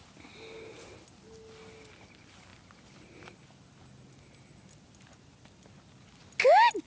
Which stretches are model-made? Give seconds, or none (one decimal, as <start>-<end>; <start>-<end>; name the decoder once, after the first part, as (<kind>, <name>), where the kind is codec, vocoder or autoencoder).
none